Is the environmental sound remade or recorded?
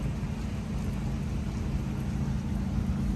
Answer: recorded